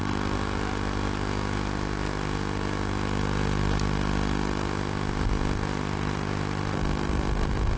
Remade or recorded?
recorded